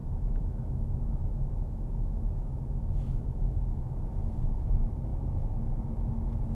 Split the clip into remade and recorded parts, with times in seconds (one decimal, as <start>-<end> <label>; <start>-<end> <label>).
0.0-3.9 remade; 3.9-6.5 recorded

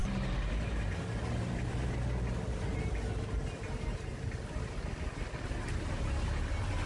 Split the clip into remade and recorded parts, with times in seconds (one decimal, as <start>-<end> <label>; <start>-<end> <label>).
0.0-6.9 recorded

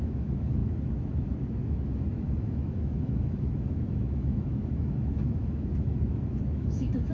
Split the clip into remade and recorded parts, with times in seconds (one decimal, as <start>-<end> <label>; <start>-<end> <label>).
0.0-7.1 remade

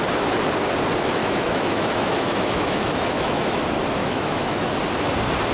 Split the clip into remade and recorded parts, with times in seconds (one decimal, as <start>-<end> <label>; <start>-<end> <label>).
0.0-1.2 recorded; 1.2-3.6 remade; 3.6-4.0 recorded; 4.0-4.7 remade; 4.7-5.5 recorded